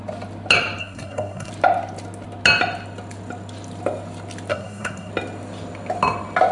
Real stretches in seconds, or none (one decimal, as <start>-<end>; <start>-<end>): 0.0-0.8; 1.5-4.5; 5.1-6.5